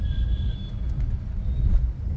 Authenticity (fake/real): real